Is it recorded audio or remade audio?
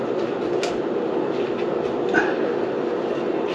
recorded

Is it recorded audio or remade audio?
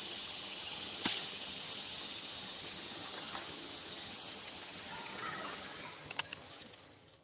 remade